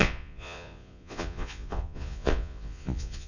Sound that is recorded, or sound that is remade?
remade